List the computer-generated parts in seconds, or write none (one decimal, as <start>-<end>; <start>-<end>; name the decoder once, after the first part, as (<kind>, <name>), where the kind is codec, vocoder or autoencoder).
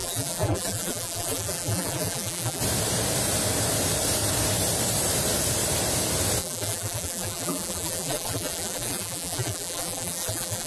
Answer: 0.0-2.6 (vocoder, BigVGAN v2); 6.4-10.7